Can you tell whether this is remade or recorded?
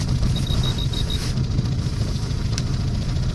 recorded